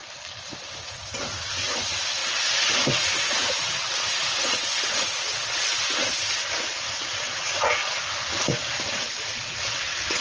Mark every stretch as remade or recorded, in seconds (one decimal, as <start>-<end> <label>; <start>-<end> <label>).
0.0-0.9 recorded; 0.9-7.8 remade; 7.8-8.9 recorded; 8.9-10.2 remade